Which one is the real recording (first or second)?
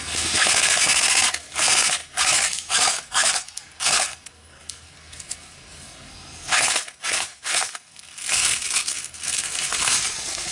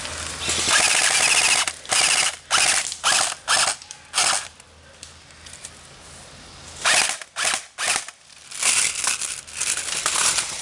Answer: second